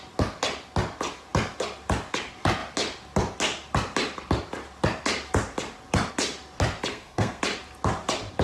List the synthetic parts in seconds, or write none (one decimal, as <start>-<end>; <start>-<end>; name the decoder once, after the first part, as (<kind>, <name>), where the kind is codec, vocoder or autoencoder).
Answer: 6.9-7.4 (codec, SNAC)